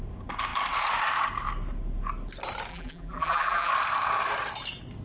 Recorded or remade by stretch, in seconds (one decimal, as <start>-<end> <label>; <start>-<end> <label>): 0.0-2.7 recorded; 2.7-3.7 remade; 3.7-5.0 recorded